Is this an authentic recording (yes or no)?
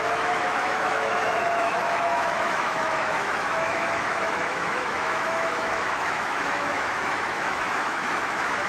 no